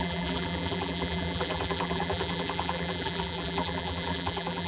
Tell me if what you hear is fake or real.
fake